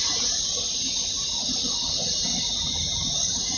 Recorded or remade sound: recorded